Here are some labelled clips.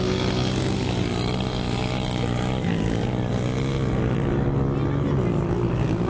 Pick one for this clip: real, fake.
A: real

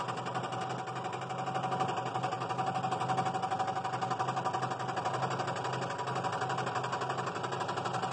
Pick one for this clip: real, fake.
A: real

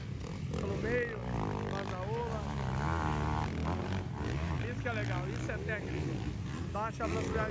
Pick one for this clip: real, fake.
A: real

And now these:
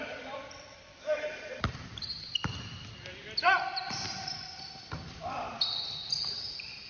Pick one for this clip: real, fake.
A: fake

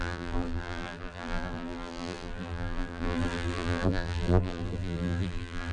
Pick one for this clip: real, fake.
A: fake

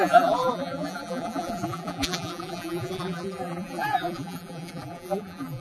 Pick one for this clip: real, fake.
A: fake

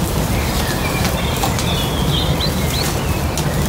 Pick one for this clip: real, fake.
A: real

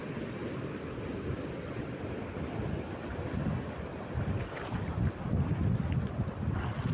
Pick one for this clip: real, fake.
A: real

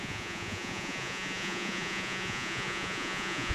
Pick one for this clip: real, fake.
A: fake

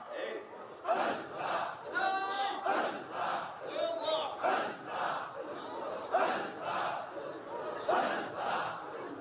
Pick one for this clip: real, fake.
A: real